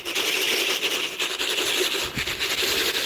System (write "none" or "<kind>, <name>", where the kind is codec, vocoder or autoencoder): none